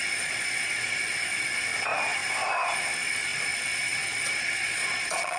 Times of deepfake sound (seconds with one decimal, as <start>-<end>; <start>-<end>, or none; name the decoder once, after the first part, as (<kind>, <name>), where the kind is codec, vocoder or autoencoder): 0.0-1.0 (vocoder, Vocos); 4.2-5.4

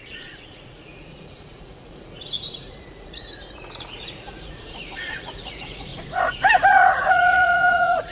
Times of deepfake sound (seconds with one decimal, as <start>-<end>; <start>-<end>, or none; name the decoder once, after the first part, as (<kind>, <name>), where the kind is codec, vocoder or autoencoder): 0.0-5.9 (vocoder, Vocos); 6.7-8.1

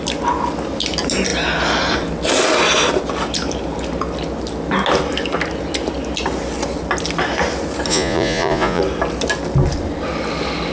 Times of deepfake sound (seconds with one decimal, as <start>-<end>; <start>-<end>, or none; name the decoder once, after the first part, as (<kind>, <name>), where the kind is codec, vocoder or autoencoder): 7.9-8.8 (vocoder, Vocos)

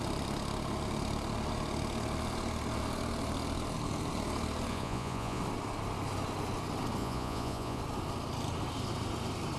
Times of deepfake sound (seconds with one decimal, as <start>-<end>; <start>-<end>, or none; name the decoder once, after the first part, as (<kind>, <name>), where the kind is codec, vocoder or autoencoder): 4.7-5.4 (vocoder, Vocos); 7.0-7.8

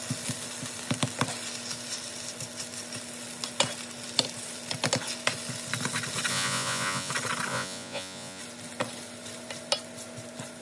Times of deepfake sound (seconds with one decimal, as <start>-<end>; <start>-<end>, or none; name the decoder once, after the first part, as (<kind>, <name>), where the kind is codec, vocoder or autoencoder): 6.3-7.1 (vocoder, Vocos); 7.5-8.4

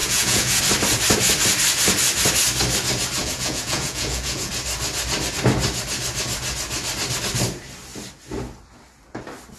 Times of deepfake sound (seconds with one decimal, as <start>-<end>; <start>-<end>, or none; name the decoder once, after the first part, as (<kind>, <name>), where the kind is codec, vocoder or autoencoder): 0.0-0.6 (vocoder, Vocos); 3.2-4.5